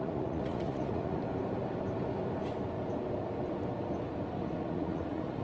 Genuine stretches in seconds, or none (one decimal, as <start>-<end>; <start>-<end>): 1.2-4.4